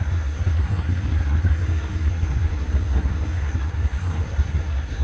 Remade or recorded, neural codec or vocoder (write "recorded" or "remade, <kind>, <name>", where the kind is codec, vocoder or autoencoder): remade, codec, SNAC